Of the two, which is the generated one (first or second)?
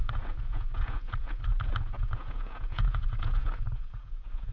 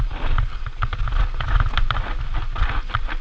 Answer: first